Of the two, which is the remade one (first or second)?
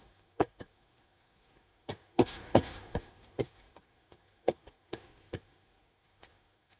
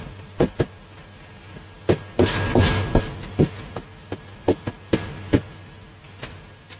first